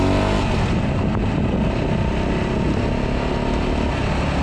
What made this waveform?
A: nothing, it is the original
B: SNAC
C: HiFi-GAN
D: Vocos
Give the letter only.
A